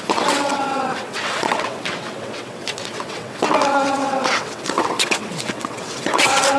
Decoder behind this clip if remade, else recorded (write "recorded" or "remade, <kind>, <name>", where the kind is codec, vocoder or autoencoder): remade, vocoder, WaveNeXt